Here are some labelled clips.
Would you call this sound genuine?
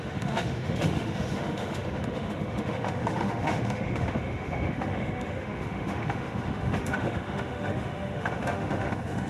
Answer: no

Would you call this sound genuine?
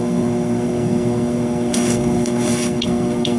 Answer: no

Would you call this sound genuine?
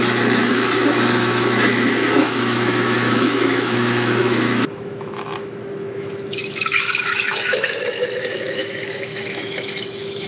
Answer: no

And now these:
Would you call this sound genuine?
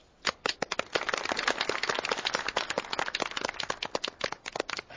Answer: yes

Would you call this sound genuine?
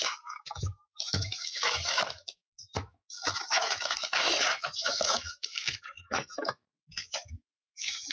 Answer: no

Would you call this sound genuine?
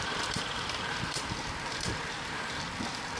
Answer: no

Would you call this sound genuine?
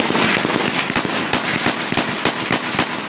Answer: yes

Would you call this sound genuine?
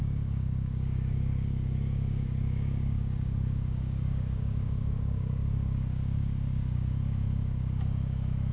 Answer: no